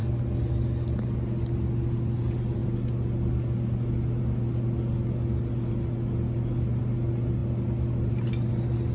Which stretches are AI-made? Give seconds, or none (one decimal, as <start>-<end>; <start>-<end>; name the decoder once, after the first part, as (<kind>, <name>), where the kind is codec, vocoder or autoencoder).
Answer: none